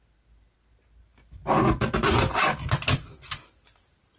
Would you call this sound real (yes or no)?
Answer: yes